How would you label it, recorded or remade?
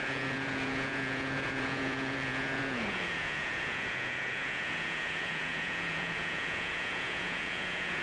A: remade